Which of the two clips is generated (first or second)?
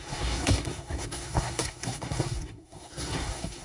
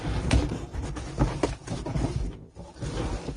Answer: first